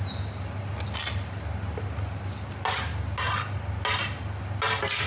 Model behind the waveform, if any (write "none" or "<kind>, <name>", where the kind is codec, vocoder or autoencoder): none